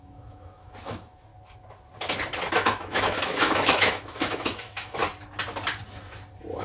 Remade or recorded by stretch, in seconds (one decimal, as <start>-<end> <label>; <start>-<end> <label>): 0.0-1.3 remade; 1.3-2.5 recorded; 2.5-5.0 remade; 5.0-6.6 recorded